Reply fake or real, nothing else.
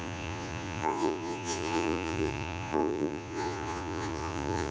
fake